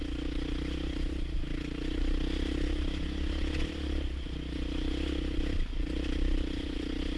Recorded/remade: recorded